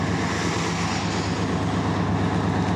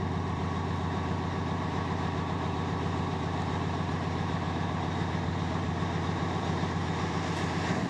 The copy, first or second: second